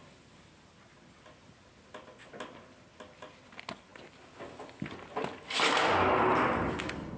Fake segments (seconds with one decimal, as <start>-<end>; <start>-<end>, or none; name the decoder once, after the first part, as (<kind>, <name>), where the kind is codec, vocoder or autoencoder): none